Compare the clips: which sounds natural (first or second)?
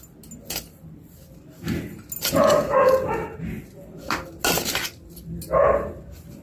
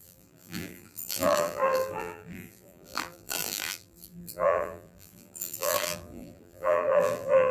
first